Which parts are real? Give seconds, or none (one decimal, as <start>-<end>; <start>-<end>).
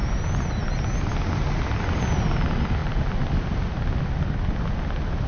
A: 0.0-5.3